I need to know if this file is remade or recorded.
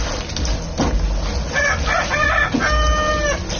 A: recorded